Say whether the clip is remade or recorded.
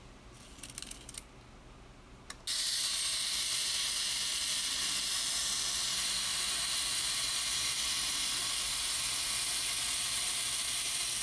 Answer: recorded